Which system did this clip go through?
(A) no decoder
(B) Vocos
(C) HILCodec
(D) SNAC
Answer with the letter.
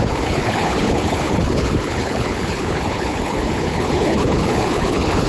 C